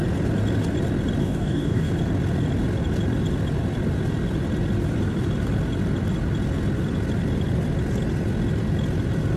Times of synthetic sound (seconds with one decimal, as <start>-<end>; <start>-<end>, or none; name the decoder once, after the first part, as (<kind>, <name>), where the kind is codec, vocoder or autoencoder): 1.2-1.9 (codec, DAC)